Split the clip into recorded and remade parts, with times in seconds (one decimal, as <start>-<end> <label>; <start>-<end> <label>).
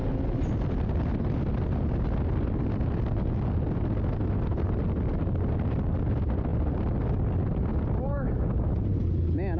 0.0-9.6 recorded